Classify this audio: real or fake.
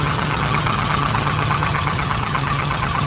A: fake